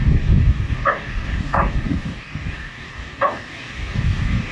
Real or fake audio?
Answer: fake